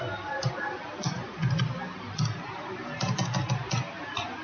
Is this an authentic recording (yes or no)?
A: yes